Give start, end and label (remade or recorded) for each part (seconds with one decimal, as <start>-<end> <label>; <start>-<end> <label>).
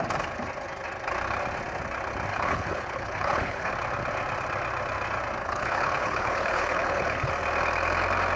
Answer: 0.0-2.3 recorded; 2.3-3.7 remade; 3.7-5.4 recorded; 5.4-7.3 remade; 7.3-8.4 recorded